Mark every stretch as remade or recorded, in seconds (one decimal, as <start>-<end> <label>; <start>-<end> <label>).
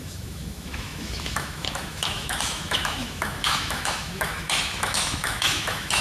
0.0-6.0 remade